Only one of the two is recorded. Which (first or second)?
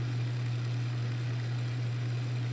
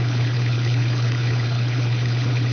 first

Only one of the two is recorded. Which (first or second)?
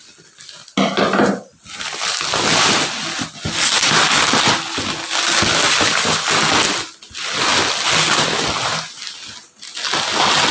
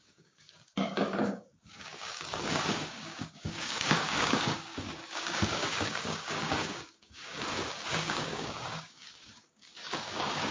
first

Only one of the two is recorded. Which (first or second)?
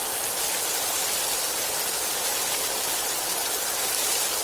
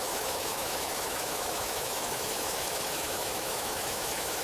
first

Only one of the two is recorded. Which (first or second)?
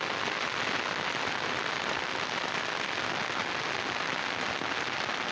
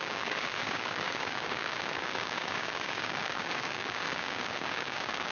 first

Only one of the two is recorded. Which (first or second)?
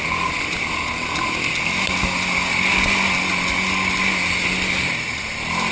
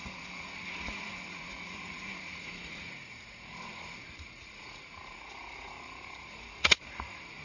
first